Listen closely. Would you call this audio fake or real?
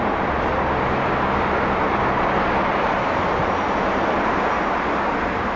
real